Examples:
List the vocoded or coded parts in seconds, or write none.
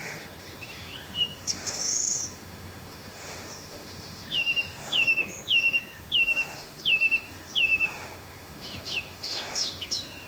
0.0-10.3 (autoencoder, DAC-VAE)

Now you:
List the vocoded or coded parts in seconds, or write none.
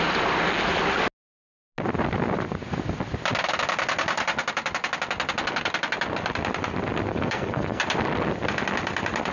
7.1-7.8 (codec, SNAC)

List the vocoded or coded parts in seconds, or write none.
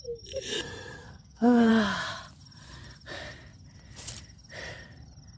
1.0-1.7 (codec, SNAC)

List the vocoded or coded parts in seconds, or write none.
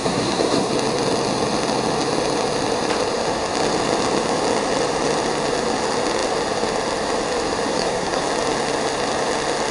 0.0-0.7 (codec, SNAC); 7.7-8.2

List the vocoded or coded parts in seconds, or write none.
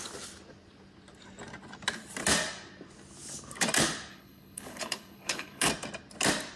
4.1-5.7 (codec, HILCodec)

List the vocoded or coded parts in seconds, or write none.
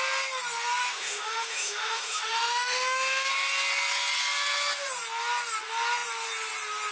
0.8-3.3 (autoencoder, DAC-VAE)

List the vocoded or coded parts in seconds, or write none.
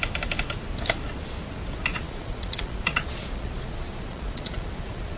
1.9-5.2 (vocoder, Vocos)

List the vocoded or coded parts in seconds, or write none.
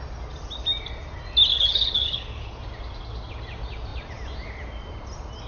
1.5-2.6 (codec, HILCodec)